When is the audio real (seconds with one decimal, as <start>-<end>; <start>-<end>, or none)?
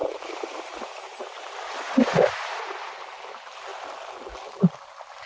3.2-5.3